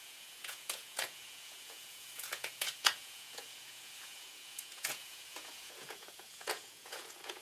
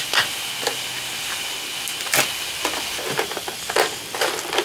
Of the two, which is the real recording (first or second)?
second